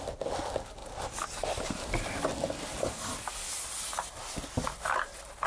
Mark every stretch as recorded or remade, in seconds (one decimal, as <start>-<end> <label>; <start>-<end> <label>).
0.0-5.5 recorded